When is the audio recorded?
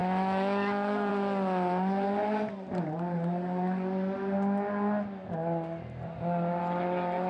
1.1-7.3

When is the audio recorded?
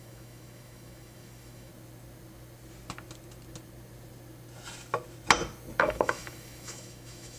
1.7-5.8